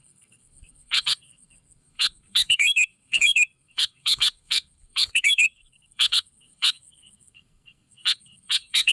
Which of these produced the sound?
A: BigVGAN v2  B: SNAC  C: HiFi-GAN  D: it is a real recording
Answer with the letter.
B